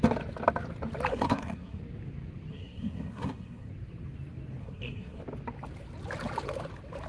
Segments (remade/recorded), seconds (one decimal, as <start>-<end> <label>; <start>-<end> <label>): 0.0-1.1 recorded; 1.1-1.8 remade; 1.8-2.5 recorded; 2.5-3.7 remade; 3.7-4.6 recorded; 4.6-5.2 remade; 5.2-7.1 recorded